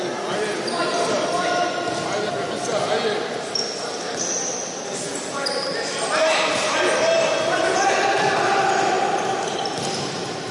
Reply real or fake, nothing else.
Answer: real